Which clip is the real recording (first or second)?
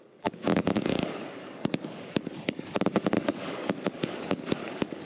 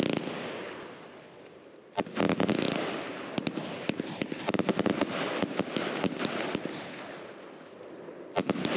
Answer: second